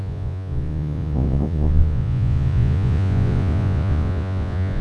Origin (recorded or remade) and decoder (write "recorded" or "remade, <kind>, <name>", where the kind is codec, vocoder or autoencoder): remade, vocoder, Vocos